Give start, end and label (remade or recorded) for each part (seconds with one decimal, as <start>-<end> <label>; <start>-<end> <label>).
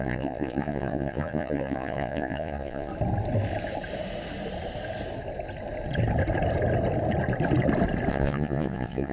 0.0-2.9 remade; 2.9-8.1 recorded; 8.1-9.1 remade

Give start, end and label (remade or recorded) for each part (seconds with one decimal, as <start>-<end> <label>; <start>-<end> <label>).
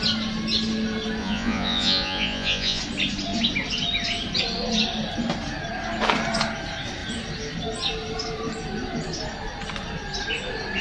0.0-1.2 recorded; 1.2-2.8 remade; 2.8-10.8 recorded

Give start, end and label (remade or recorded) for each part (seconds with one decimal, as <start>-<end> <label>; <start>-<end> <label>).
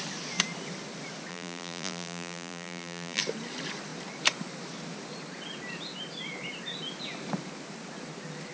0.0-1.3 recorded; 1.3-3.2 remade; 3.2-8.5 recorded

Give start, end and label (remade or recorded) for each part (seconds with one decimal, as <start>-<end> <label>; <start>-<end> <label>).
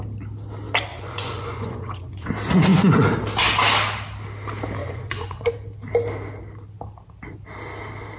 0.0-0.9 recorded; 0.9-2.3 remade; 2.3-4.8 recorded; 4.8-5.5 remade; 5.5-8.2 recorded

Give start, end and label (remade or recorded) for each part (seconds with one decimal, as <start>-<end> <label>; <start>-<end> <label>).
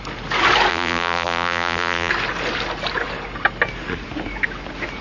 0.0-0.7 recorded; 0.7-2.1 remade; 2.1-5.0 recorded